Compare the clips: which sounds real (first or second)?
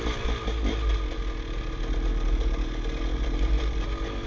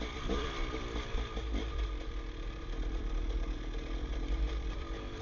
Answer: first